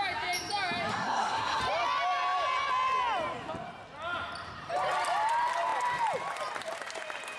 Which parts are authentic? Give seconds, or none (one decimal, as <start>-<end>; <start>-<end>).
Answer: 0.0-0.9; 1.6-7.4